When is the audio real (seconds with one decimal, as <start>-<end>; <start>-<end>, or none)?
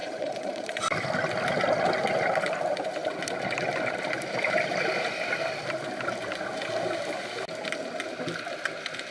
0.8-9.1